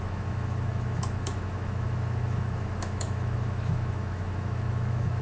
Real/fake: fake